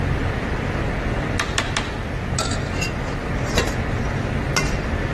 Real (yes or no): yes